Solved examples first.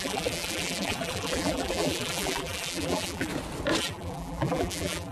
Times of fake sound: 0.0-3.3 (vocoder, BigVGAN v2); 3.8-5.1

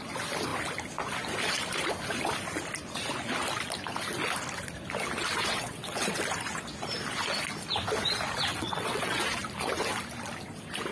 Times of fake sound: 5.4-6.2 (vocoder, WaveNeXt); 8.5-9.2